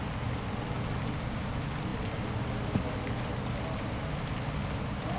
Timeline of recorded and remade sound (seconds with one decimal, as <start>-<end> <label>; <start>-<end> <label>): 0.0-5.2 recorded